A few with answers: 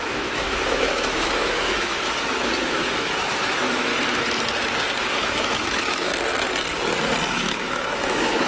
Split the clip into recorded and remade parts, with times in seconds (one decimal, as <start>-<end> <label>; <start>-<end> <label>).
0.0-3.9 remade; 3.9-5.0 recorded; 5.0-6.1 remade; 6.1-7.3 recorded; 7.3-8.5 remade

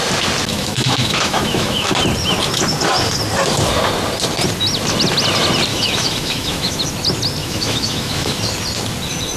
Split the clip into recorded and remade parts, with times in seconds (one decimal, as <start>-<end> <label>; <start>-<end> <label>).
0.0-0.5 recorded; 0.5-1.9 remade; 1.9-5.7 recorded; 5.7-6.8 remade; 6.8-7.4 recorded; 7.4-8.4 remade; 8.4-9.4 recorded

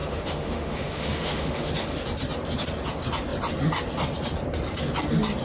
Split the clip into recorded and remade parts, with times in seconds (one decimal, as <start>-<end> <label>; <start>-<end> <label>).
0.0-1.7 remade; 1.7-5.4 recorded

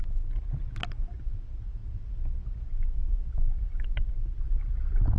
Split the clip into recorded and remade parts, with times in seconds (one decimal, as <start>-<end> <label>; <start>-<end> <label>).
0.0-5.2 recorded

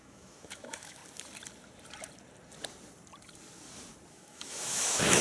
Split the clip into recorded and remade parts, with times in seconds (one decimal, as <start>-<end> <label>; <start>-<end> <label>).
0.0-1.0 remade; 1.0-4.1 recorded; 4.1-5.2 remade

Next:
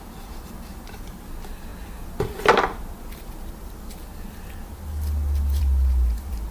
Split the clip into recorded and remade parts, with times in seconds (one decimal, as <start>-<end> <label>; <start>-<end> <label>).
0.0-6.5 recorded